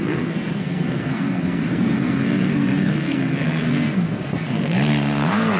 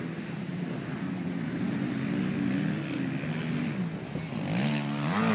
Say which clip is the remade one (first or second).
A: first